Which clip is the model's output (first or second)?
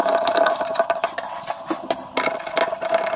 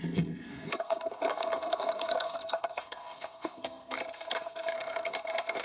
second